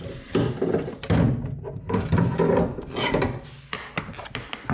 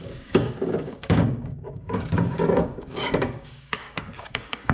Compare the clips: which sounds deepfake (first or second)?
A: second